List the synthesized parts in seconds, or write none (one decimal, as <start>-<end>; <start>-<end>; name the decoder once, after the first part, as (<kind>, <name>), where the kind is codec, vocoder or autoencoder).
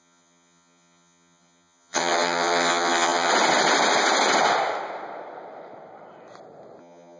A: 0.0-3.3 (vocoder, HiFi-GAN); 6.8-7.2